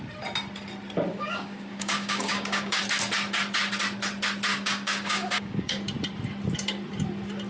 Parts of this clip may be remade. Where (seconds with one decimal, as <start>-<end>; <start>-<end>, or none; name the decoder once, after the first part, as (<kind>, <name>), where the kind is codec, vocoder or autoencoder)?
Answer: 1.1-2.8 (codec, DAC); 4.5-5.8